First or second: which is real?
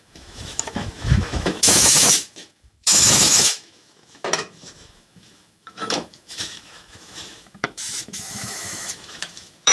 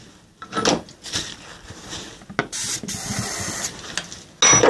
second